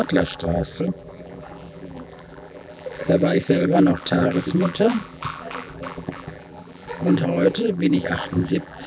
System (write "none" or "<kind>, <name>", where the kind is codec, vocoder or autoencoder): vocoder, BigVGAN v2